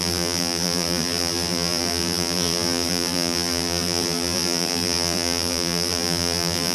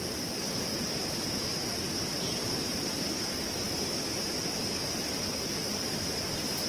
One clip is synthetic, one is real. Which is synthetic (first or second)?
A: first